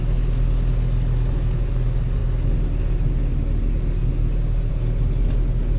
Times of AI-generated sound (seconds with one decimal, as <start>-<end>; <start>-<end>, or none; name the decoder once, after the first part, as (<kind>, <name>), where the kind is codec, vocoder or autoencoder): none